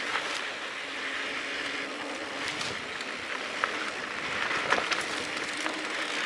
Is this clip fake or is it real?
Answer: real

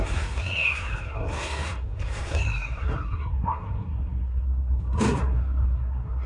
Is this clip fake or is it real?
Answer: fake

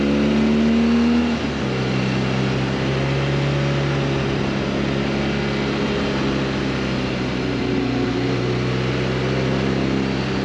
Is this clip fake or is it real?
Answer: real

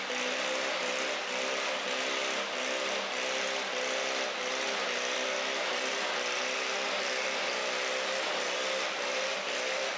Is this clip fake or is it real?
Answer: real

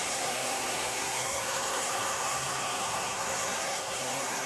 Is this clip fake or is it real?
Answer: fake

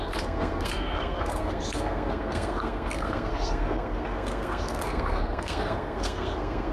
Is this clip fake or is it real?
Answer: fake